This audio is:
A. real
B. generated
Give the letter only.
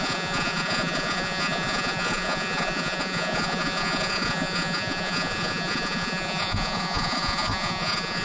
B